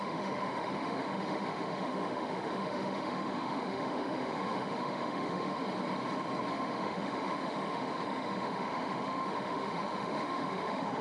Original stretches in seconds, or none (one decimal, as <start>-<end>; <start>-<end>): 5.6-6.5